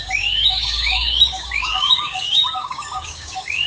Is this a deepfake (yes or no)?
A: yes